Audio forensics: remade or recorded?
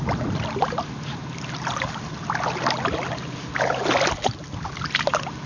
recorded